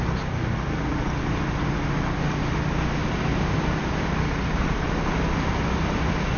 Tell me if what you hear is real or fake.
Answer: real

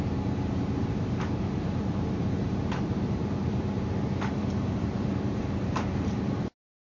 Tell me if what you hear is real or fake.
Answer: fake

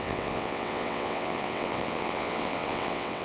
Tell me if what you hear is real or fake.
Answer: fake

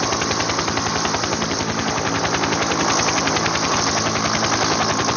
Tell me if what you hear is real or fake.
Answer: real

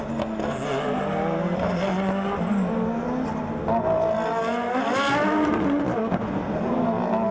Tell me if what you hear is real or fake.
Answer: real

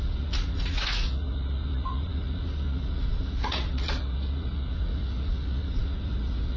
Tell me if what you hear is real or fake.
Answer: fake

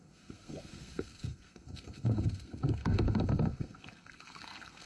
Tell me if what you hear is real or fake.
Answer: fake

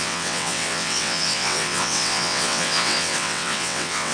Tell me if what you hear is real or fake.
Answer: fake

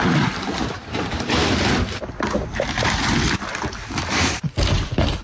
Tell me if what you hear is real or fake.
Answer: fake